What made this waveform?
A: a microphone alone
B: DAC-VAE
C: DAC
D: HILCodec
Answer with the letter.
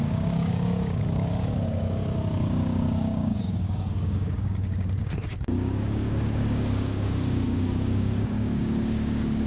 C